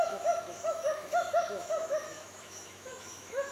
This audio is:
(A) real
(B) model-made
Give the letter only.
B